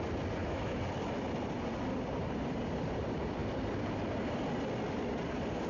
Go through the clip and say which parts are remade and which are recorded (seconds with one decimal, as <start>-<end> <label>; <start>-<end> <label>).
0.0-0.4 recorded; 0.4-0.9 remade; 0.9-5.7 recorded